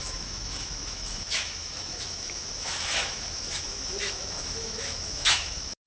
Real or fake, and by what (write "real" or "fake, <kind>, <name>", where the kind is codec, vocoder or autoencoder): fake, autoencoder, DAC-VAE